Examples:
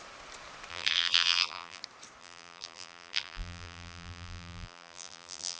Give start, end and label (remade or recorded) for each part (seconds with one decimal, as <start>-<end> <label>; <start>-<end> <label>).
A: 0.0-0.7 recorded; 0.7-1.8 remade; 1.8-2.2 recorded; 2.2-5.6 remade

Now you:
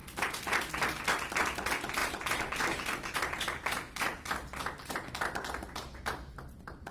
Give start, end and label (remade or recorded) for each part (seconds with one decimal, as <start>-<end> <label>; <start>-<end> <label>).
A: 0.0-6.9 recorded

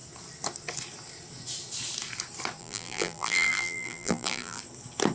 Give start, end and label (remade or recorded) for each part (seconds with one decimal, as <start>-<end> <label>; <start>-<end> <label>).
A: 0.0-2.6 recorded; 2.6-4.6 remade; 4.6-5.1 recorded